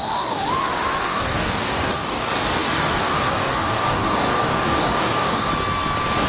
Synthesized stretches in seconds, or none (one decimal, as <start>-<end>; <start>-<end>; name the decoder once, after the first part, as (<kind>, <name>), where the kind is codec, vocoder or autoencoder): 0.0-0.4 (codec, DAC); 1.0-5.5